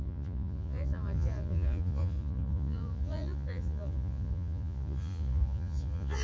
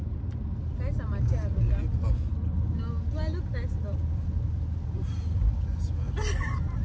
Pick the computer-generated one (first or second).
first